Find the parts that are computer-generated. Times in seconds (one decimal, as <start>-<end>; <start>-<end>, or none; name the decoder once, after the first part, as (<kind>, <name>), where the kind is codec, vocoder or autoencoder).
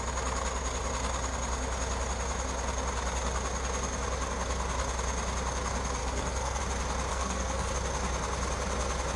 6.0-6.6 (codec, SNAC); 7.1-7.7